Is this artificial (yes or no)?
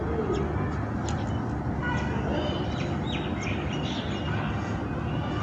no